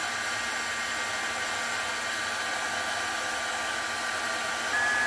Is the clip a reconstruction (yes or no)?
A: no